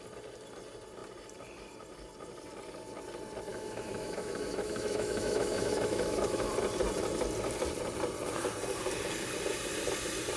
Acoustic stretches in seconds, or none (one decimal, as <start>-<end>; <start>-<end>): 0.0-3.5; 6.5-10.4